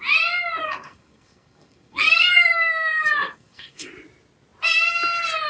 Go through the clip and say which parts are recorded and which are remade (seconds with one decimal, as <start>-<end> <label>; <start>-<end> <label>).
0.0-0.6 recorded; 0.6-3.9 remade; 3.9-5.5 recorded